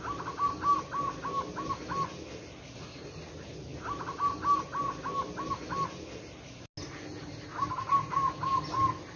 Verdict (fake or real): real